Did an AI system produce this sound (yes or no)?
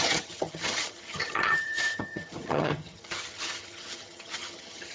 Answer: yes